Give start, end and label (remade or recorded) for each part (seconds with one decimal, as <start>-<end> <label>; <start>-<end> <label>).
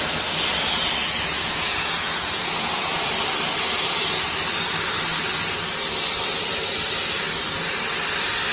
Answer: 0.0-1.3 recorded; 1.3-3.1 remade; 3.1-8.5 recorded